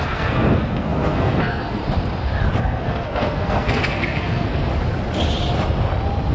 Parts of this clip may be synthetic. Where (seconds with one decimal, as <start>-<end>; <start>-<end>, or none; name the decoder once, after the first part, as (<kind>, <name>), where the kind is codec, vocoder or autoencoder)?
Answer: 0.0-1.8 (codec, SNAC); 2.6-4.7